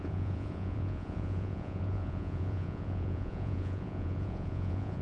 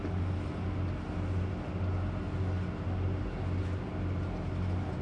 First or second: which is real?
second